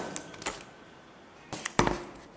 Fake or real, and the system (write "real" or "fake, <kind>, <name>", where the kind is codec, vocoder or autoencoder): real